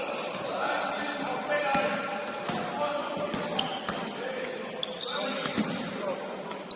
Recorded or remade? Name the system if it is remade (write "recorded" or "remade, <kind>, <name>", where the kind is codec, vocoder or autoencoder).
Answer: recorded